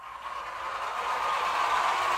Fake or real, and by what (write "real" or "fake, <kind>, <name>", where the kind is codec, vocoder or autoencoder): real